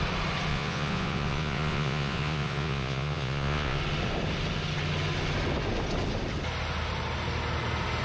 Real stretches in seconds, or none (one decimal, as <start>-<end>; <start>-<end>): 0.0-0.5; 3.8-8.0